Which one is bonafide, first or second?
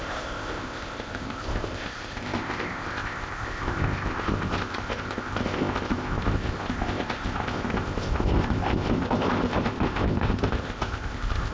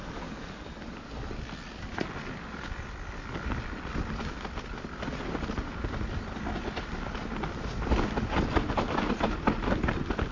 second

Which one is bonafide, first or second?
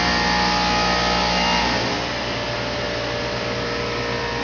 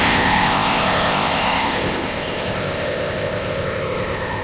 first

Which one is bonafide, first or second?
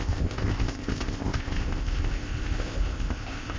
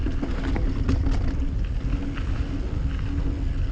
second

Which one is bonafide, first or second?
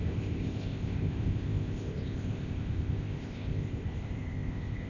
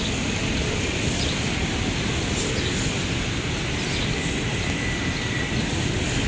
second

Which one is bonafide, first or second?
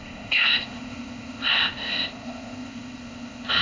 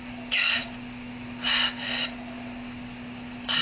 second